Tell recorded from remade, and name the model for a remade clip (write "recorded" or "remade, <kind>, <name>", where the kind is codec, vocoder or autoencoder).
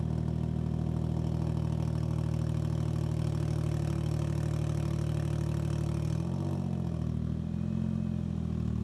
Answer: recorded